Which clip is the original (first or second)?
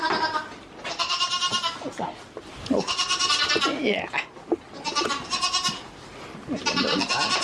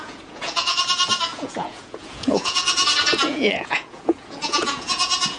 first